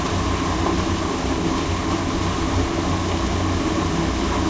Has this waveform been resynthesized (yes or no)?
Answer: no